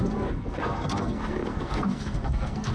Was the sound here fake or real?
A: fake